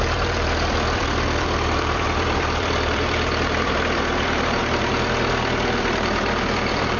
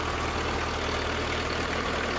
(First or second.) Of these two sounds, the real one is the second